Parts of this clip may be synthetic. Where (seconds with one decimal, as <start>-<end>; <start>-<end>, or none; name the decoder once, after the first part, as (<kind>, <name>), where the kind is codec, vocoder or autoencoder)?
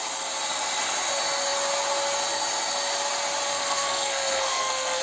3.5-5.0 (codec, SNAC)